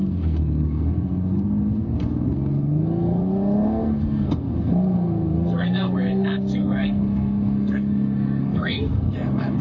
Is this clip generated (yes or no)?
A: yes